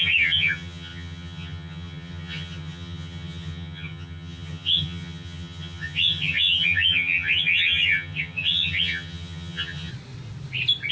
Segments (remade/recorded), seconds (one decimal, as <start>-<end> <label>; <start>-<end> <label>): 0.0-9.9 remade; 9.9-10.9 recorded